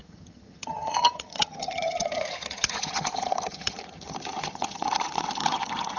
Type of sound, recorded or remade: remade